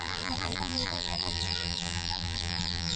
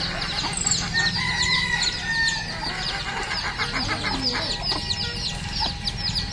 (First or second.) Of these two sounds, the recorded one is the second